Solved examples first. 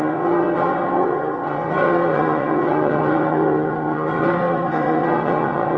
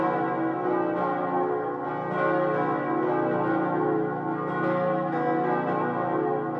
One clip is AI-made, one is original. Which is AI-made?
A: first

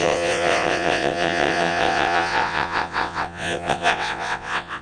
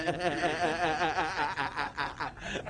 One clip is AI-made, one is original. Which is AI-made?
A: first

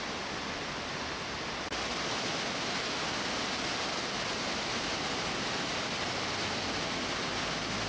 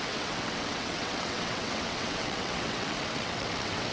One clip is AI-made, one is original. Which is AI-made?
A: second